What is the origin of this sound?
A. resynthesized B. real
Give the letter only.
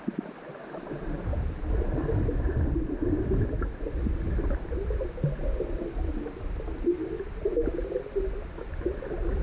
B